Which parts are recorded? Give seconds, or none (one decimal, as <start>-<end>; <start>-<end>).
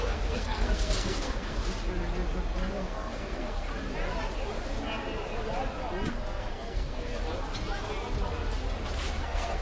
1.6-2.7; 3.7-6.1; 7.1-9.2